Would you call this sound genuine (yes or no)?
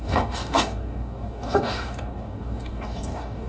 no